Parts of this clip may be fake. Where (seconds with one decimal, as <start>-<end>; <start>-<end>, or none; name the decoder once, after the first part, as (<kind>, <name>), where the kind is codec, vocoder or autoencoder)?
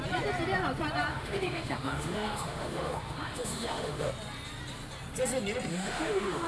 1.1-4.1 (autoencoder, DAC-VAE); 5.7-6.5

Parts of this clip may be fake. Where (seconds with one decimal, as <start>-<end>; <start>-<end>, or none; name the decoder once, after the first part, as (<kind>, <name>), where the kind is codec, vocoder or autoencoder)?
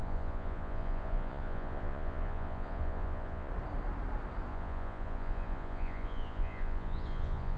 0.0-3.5 (vocoder, Vocos); 4.5-7.6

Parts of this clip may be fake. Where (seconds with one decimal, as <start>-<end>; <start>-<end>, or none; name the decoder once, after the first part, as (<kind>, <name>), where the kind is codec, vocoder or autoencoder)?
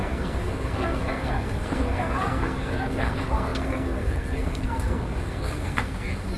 0.0-6.4 (codec, SNAC)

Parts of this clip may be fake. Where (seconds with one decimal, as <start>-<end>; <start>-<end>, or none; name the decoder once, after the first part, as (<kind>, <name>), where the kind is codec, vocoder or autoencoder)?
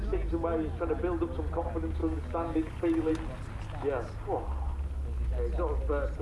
2.0-3.1 (codec, DAC)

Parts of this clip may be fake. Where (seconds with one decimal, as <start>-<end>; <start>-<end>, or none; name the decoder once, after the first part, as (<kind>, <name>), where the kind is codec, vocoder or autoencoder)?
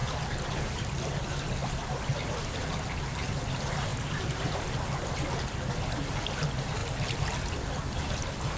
1.6-2.8 (vocoder, BigVGAN v2); 6.8-7.7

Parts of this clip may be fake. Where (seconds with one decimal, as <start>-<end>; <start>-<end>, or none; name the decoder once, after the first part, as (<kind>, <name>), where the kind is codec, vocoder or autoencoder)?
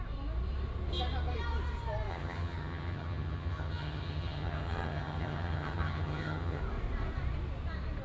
2.1-6.6 (vocoder, HiFi-GAN)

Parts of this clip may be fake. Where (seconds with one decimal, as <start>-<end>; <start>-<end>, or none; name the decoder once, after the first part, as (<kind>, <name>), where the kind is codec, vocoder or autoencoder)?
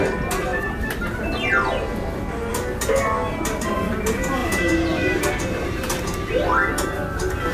0.5-1.0 (vocoder, BigVGAN v2); 4.4-6.2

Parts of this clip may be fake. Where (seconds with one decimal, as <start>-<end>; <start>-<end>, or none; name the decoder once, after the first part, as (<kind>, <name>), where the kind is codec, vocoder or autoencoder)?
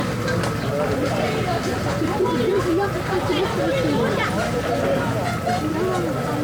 1.0-3.6 (vocoder, BigVGAN v2)